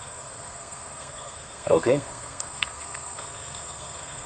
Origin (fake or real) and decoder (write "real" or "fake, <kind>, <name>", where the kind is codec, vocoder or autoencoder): fake, codec, SNAC